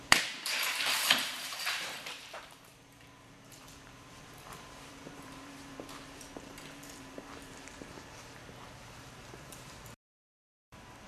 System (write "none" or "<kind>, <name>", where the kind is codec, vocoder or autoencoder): vocoder, BigVGAN v2